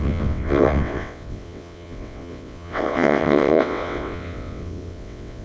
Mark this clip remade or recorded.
remade